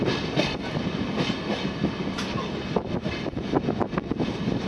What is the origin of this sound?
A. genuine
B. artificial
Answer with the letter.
A